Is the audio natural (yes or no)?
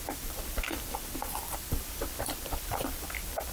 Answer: no